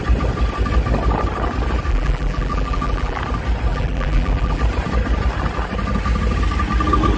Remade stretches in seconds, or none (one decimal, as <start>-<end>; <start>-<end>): 1.9-3.2; 3.7-4.6